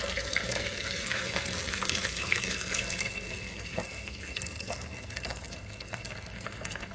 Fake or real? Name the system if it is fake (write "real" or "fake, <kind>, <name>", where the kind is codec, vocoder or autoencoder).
fake, codec, SNAC